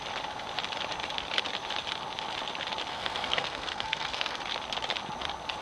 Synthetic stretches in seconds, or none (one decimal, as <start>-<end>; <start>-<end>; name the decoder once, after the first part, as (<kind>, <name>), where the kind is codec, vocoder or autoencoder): 2.9-4.4 (codec, SNAC)